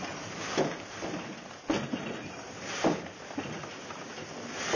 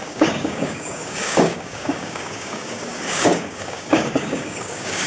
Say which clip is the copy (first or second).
second